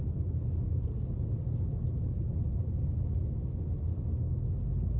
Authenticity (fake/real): real